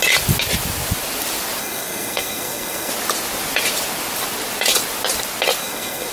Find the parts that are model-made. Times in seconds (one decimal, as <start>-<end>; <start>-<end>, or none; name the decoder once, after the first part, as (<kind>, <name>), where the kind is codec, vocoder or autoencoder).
1.6-2.9 (codec, SNAC); 5.6-6.1